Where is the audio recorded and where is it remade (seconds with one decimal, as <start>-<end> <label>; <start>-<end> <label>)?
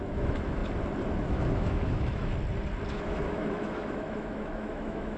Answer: 0.0-0.6 remade; 0.6-1.2 recorded; 1.2-2.3 remade; 2.3-2.9 recorded; 2.9-5.2 remade